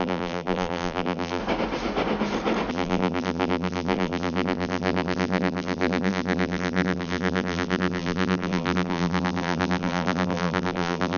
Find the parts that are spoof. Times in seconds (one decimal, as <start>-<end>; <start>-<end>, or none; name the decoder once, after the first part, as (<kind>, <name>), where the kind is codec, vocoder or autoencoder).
0.0-1.4 (vocoder, BigVGAN v2); 2.7-11.2